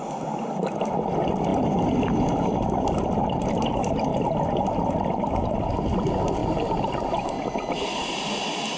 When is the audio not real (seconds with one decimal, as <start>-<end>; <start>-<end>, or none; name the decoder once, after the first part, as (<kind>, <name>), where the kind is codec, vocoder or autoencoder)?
6.4-7.5 (vocoder, BigVGAN v2)

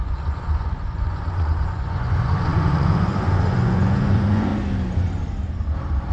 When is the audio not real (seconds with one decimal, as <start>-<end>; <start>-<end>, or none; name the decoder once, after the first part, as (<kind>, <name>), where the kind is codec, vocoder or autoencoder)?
0.0-4.5 (vocoder, Vocos)